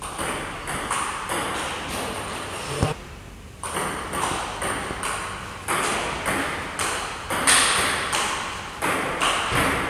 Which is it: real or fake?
real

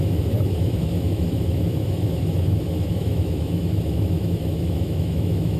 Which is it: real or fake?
fake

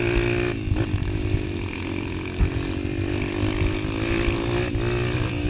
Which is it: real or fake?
real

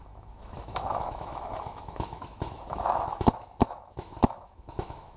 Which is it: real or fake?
fake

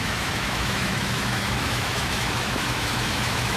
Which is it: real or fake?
fake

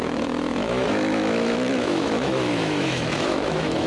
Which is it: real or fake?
fake